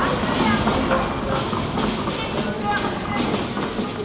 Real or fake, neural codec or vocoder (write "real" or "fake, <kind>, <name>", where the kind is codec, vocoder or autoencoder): real